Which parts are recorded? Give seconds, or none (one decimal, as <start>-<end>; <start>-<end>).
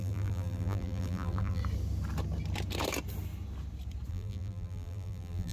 1.6-4.1